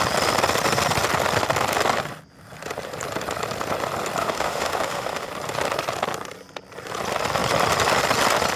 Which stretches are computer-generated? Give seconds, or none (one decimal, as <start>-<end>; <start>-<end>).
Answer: 4.2-5.3